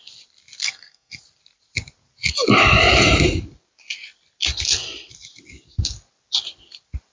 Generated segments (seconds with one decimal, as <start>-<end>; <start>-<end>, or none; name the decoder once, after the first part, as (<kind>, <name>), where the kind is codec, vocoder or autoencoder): 0.6-1.2 (codec, SNAC)